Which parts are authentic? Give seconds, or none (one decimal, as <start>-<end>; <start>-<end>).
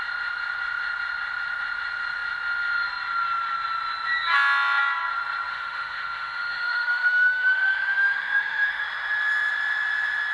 0.0-5.5; 8.8-10.3